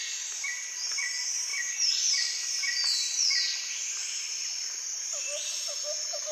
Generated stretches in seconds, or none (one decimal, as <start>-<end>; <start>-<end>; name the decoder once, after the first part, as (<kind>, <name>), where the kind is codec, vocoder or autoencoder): 1.5-2.6 (vocoder, BigVGAN v2)